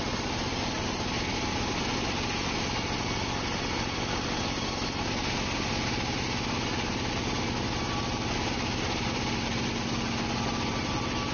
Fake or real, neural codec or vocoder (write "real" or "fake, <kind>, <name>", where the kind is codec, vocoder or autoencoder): real